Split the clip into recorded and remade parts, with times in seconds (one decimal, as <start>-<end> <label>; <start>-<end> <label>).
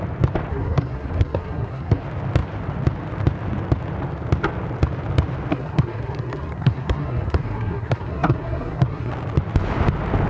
0.0-0.5 recorded; 0.5-2.0 remade; 2.0-5.5 recorded; 5.5-9.1 remade; 9.1-10.3 recorded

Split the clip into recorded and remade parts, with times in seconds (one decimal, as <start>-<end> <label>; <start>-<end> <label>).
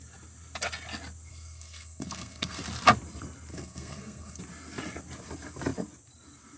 0.0-1.3 recorded; 1.3-2.6 remade; 2.6-3.5 recorded; 3.5-4.4 remade; 4.4-6.6 recorded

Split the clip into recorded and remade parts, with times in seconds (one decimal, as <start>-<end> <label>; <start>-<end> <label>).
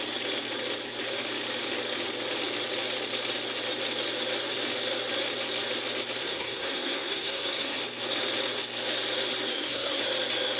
0.0-6.2 recorded; 6.2-7.8 remade; 7.8-9.5 recorded; 9.5-10.0 remade; 10.0-10.6 recorded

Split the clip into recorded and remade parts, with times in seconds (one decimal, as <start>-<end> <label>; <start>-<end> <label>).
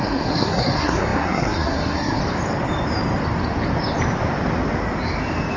0.0-2.2 remade; 2.2-5.6 recorded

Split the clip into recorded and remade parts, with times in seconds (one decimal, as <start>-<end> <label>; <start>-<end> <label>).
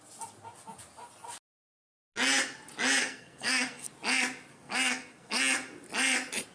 0.0-3.0 recorded; 3.0-3.9 remade; 3.9-4.5 recorded; 4.5-5.4 remade; 5.4-6.5 recorded